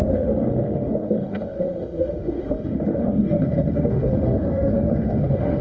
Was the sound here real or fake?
fake